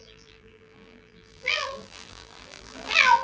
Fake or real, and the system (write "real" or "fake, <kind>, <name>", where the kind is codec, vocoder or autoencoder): fake, vocoder, BigVGAN v2